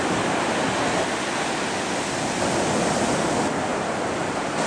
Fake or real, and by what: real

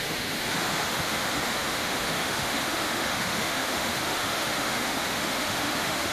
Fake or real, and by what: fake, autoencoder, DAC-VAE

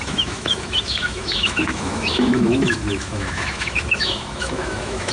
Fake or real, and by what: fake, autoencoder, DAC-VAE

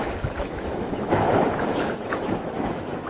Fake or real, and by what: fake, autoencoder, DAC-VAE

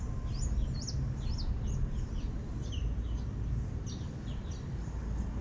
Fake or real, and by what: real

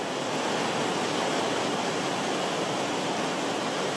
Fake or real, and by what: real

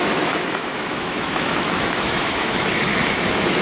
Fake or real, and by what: fake, autoencoder, DAC-VAE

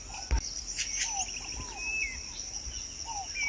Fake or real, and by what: real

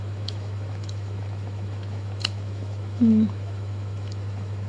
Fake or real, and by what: fake, autoencoder, DAC-VAE